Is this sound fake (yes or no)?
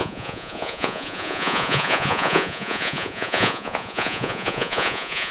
yes